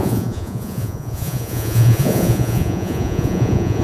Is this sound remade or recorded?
remade